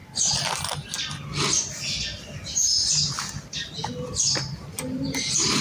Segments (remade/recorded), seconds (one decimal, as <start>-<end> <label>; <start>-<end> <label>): 0.0-5.6 recorded